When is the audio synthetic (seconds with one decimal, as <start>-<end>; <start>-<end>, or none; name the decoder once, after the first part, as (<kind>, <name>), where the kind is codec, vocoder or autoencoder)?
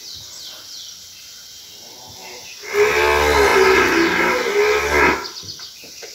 none